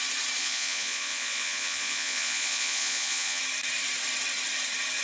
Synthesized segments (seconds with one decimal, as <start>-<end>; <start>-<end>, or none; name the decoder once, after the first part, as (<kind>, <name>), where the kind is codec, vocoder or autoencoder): 0.4-3.4 (vocoder, Vocos)